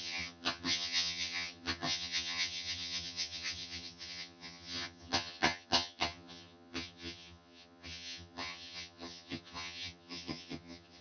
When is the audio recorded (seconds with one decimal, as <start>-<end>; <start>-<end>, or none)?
none